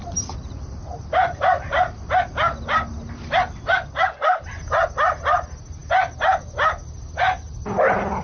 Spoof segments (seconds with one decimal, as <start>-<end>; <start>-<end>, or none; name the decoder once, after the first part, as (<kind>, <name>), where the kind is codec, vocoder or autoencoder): none